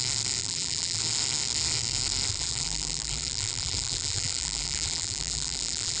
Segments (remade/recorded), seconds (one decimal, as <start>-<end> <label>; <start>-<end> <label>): 0.0-0.4 recorded; 0.4-1.0 remade; 1.0-2.3 recorded; 2.3-6.0 remade